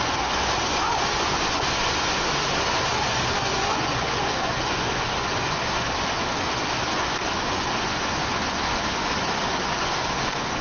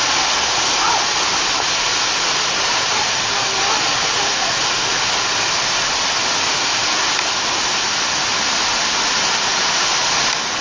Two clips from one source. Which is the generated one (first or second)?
first